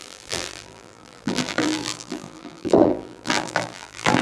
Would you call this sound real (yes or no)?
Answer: no